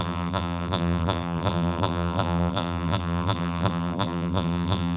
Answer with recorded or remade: remade